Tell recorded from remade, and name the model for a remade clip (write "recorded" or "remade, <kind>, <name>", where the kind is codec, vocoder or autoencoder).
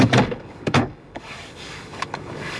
remade, codec, DAC